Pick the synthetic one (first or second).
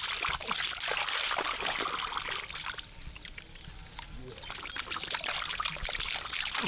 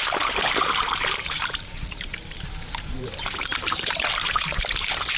second